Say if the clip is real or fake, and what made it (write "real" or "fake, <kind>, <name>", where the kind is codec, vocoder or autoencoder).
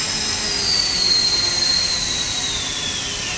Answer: real